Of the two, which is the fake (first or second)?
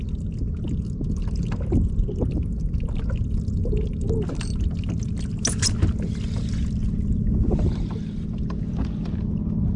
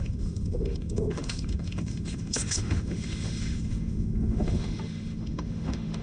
second